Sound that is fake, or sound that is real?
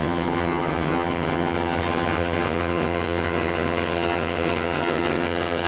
fake